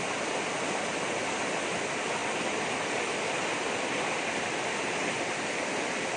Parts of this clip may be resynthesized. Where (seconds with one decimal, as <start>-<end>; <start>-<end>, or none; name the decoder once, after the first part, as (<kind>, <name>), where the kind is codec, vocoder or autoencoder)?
none